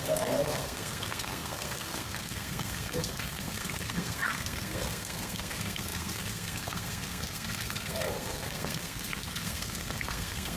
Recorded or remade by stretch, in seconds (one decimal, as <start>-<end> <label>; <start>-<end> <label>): 0.0-10.6 remade